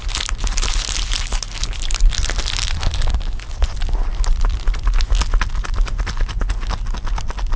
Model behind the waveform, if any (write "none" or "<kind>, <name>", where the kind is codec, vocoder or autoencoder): none